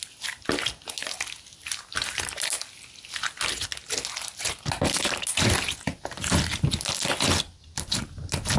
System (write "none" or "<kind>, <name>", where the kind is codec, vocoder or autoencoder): none